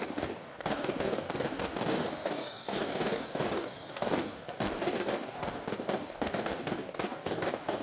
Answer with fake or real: fake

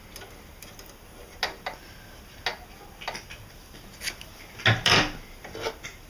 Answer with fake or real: real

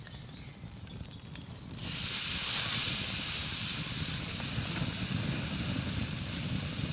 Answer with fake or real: real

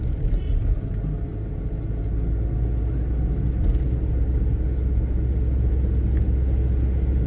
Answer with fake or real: real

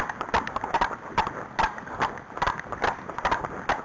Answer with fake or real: real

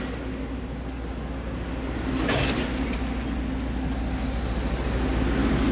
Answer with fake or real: real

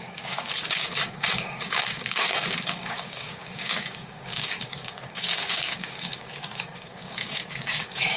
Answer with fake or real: fake